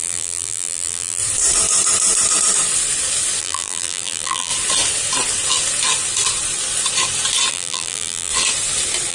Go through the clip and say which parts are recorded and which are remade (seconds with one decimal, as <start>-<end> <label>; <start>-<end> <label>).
0.0-1.2 remade; 1.2-3.4 recorded; 3.4-4.5 remade; 4.5-7.5 recorded; 7.5-8.3 remade; 8.3-9.1 recorded